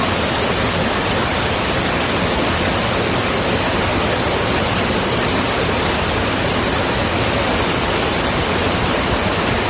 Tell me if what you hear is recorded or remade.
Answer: recorded